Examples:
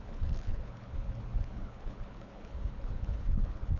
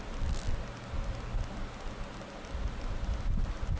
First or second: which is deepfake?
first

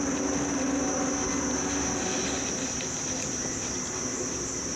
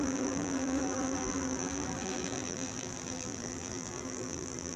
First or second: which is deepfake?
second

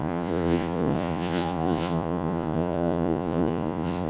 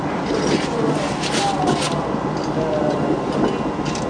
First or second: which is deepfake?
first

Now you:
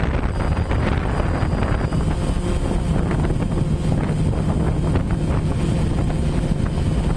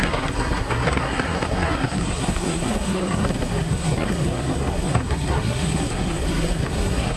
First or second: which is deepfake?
second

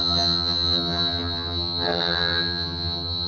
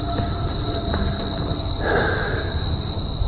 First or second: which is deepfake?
first